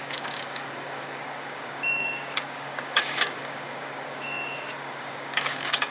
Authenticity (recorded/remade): remade